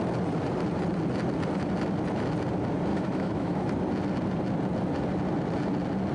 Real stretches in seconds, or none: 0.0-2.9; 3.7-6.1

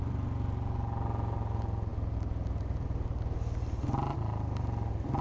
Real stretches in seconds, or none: 0.0-5.2